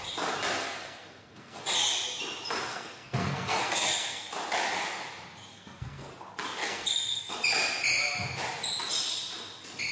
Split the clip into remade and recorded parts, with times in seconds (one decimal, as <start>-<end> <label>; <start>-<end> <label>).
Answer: 0.0-0.6 recorded; 0.6-1.6 remade; 1.6-2.7 recorded; 2.7-4.3 remade; 4.3-5.5 recorded; 5.5-6.1 remade; 6.1-6.6 recorded; 6.6-7.3 remade; 7.3-9.9 recorded